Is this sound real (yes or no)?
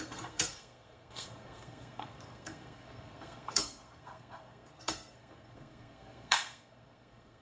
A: no